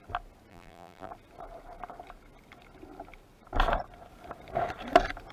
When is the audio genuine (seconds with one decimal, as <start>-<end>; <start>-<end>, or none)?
0.0-0.5; 1.1-5.3